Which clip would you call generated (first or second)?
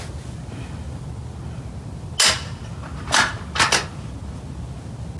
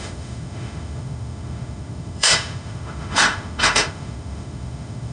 second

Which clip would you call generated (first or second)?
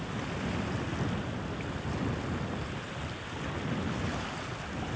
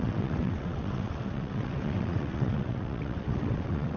second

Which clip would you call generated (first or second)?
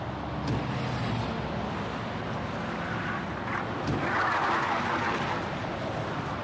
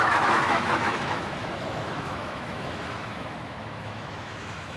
second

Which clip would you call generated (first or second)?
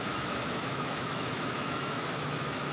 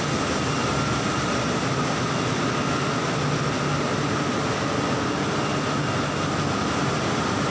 first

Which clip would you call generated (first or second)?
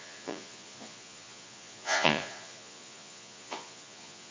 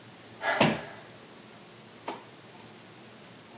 first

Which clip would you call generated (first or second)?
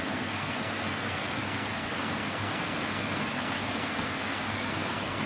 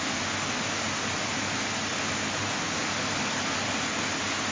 first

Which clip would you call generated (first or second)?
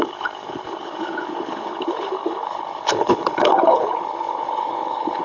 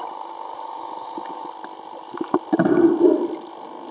first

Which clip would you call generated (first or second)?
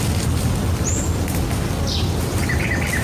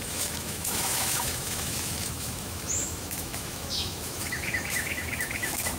second